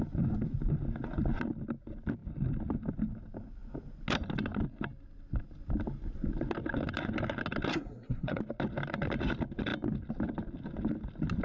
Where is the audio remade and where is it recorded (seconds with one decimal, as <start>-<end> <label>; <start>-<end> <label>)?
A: 0.0-7.7 recorded; 7.7-8.4 remade; 8.4-11.4 recorded